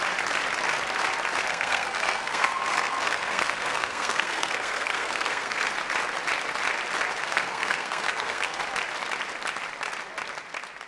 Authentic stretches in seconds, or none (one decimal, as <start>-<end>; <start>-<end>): 0.0-1.5; 5.7-7.2; 8.6-10.9